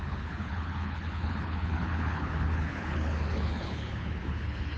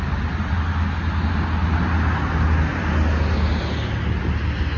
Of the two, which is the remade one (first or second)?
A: first